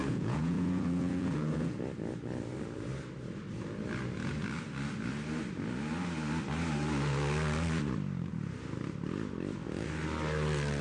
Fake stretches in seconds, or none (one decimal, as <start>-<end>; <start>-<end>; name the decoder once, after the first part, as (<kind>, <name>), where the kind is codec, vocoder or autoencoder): 0.0-1.8 (vocoder, Vocos)